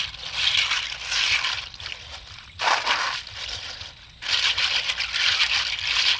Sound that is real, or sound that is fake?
real